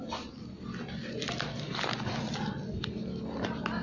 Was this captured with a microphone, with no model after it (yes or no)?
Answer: yes